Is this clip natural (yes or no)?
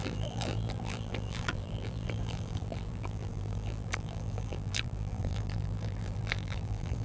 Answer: no